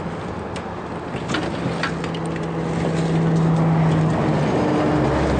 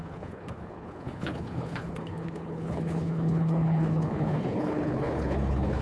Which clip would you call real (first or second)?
first